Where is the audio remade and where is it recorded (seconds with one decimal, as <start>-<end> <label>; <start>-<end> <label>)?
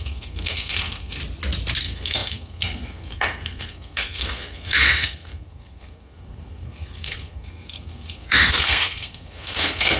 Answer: 0.0-1.2 remade; 1.2-1.8 recorded; 1.8-10.0 remade